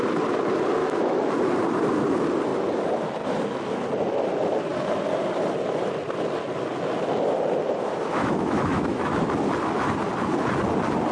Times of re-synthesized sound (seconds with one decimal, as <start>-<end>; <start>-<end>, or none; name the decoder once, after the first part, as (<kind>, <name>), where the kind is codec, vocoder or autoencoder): 0.8-1.5 (autoencoder, DAC-VAE); 8.1-9.2